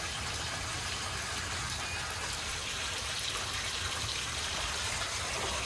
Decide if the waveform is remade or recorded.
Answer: recorded